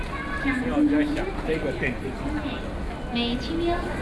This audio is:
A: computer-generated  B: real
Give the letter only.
B